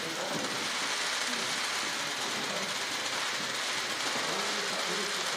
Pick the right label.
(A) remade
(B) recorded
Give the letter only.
A